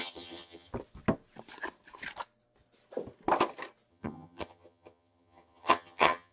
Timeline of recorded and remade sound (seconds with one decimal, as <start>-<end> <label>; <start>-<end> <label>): 0.0-0.7 remade; 0.7-3.9 recorded; 3.9-6.3 remade